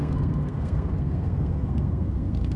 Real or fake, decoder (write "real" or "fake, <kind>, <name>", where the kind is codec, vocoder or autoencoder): fake, codec, SNAC